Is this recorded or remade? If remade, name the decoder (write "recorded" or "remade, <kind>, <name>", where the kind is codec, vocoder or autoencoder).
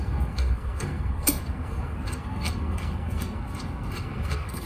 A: remade, codec, SNAC